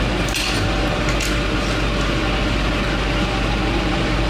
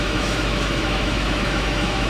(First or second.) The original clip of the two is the first